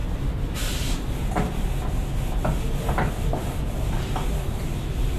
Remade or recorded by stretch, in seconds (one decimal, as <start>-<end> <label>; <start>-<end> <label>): 0.0-5.2 recorded